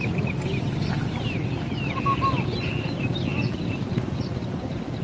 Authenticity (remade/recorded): recorded